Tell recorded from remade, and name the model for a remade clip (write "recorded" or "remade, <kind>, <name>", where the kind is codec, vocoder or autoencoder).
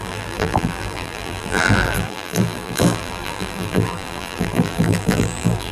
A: remade, vocoder, BigVGAN v2